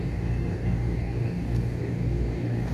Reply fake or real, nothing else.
fake